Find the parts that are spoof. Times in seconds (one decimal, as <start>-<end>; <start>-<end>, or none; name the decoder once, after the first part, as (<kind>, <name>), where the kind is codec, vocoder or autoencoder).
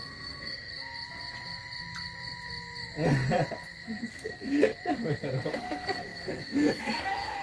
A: 0.0-0.7 (codec, SNAC); 4.0-4.7; 5.5-7.4